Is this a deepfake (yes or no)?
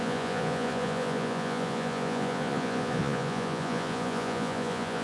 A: yes